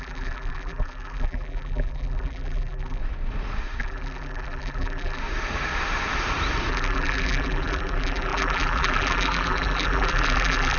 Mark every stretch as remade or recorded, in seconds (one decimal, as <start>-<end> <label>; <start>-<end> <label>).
0.0-3.0 remade; 3.0-3.8 recorded; 3.8-5.2 remade; 5.2-6.7 recorded; 6.7-10.8 remade